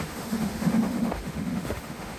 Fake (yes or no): yes